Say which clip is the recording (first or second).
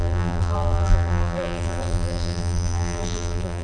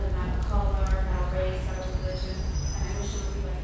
second